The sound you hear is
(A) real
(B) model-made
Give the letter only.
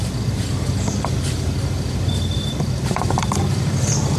B